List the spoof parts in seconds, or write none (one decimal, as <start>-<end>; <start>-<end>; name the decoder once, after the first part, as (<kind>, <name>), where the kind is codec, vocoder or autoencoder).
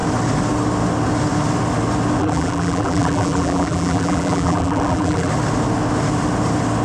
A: 2.2-5.3 (vocoder, BigVGAN v2)